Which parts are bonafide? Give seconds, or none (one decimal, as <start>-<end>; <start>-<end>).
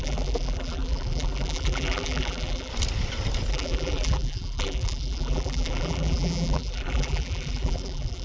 2.7-3.5